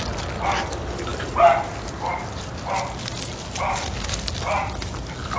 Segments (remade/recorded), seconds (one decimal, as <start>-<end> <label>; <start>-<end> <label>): 0.0-5.4 recorded